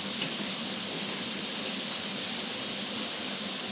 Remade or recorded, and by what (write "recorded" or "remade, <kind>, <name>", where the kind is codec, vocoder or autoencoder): recorded